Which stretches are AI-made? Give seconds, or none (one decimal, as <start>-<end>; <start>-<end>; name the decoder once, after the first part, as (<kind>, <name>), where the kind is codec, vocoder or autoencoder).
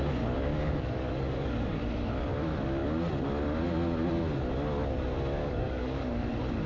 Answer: 0.5-1.8 (codec, DAC); 5.4-6.3